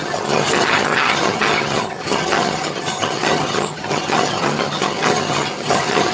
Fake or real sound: fake